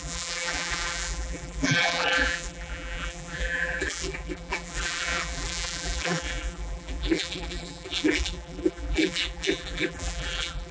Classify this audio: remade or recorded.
remade